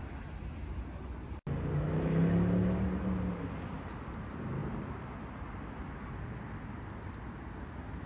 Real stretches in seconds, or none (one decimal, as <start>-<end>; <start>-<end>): 0.0-8.1